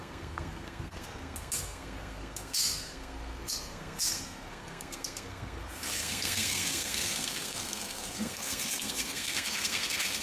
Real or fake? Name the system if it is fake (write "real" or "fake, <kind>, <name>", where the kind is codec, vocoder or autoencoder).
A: fake, codec, SNAC